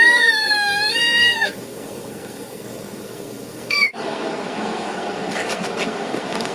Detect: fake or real fake